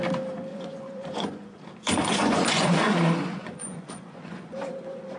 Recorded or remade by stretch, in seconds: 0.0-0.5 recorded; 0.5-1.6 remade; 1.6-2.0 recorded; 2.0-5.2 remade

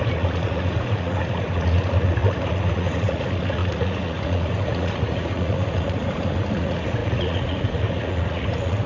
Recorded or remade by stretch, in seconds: 0.0-8.9 remade

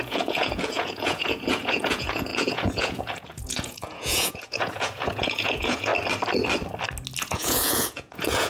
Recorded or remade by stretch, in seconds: 0.0-5.9 remade; 5.9-7.2 recorded; 7.2-8.5 remade

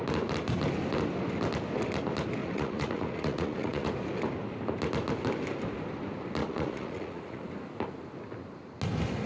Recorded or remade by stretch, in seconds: 0.0-2.4 recorded; 2.4-3.9 remade; 3.9-6.4 recorded; 6.4-7.5 remade; 7.5-9.3 recorded

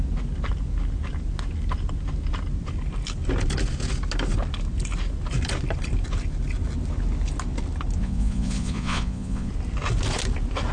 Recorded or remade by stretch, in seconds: 0.0-8.0 recorded; 8.0-9.5 remade; 9.5-10.7 recorded

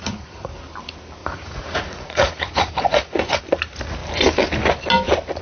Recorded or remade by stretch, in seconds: 0.0-0.5 remade; 0.5-1.2 recorded; 1.2-3.4 remade; 3.4-5.4 recorded

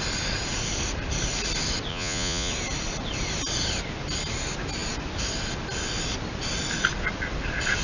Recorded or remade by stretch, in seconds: 0.0-1.9 recorded; 1.9-2.5 remade; 2.5-7.8 recorded

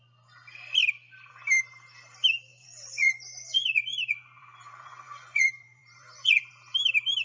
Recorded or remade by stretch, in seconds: 0.0-2.5 recorded; 2.5-6.5 remade; 6.5-7.2 recorded